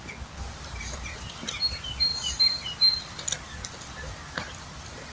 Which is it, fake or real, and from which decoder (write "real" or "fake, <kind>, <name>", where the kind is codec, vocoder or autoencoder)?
real